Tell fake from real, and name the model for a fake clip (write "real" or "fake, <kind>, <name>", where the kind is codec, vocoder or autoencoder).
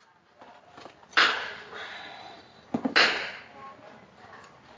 real